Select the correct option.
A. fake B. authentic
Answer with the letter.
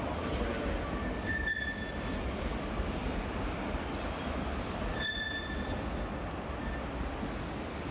B